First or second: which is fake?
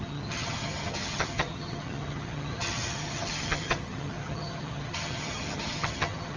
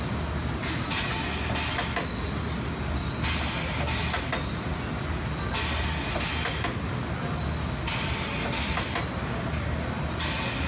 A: first